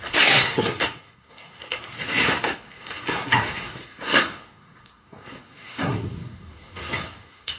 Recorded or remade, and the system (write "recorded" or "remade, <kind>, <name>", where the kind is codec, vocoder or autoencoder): remade, codec, SNAC